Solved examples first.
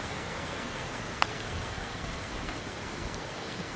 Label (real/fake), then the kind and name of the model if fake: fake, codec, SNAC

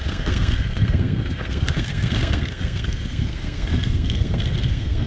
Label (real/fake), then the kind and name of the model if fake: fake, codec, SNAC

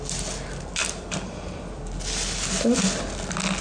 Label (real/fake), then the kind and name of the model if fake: real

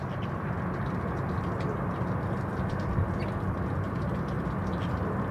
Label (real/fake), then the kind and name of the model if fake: real